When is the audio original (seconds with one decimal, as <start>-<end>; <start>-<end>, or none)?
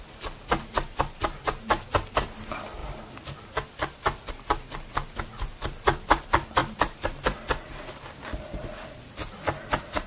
0.0-10.1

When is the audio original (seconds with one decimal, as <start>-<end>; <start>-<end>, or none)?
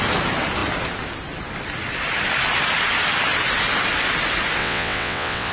0.0-4.6